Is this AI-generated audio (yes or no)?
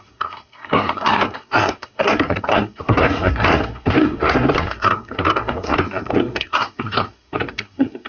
yes